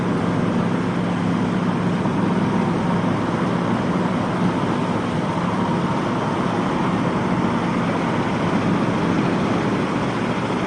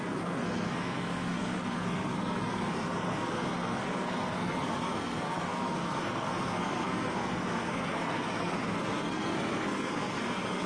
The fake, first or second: second